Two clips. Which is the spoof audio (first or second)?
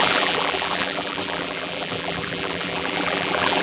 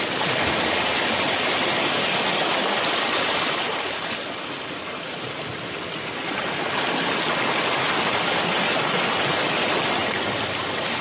first